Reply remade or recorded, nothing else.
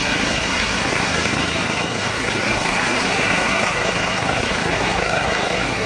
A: remade